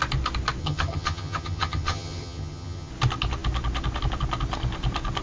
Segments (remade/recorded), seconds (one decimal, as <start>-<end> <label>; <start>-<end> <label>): 0.0-0.6 recorded; 0.6-2.9 remade; 2.9-5.2 recorded